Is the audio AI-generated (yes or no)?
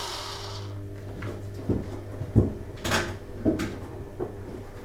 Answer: no